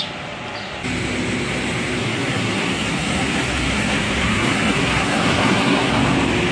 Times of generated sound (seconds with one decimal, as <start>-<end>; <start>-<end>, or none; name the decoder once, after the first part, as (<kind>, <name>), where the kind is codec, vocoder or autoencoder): 2.0-5.9 (codec, SNAC)